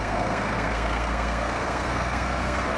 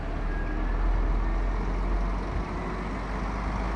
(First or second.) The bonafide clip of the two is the second